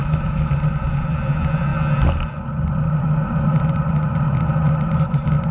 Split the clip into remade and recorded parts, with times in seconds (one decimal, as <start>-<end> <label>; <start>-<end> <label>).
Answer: 0.0-0.5 remade; 0.5-5.5 recorded